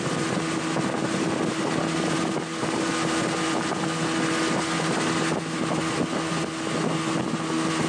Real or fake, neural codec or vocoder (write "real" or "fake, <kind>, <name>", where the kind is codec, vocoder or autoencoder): real